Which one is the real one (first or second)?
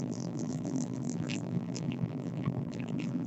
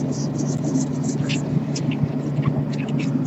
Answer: second